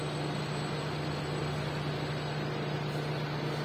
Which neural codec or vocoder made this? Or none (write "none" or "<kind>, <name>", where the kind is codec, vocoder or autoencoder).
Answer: none